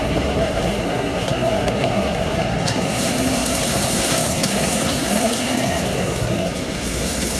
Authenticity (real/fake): fake